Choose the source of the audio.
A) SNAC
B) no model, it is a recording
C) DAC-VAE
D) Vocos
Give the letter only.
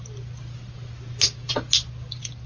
B